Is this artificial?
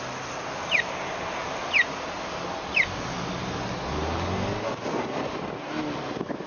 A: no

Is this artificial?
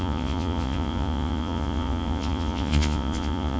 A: yes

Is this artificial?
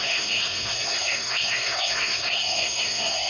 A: yes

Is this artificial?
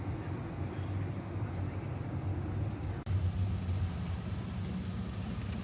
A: no